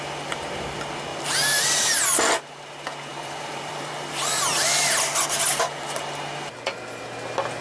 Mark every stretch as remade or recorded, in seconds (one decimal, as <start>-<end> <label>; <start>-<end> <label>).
0.0-3.1 recorded; 3.1-4.6 remade; 4.6-7.6 recorded